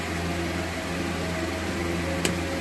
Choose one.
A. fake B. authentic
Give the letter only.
B